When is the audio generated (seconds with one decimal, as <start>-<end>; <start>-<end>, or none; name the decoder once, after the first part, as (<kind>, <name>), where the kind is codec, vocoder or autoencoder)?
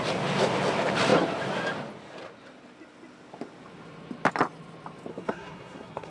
5.1-6.1 (codec, SNAC)